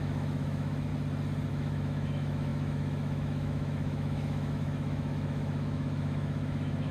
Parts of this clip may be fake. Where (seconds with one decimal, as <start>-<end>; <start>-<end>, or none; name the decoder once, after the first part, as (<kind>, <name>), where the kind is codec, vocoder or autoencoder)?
0.0-0.9 (autoencoder, DAC-VAE); 1.5-6.9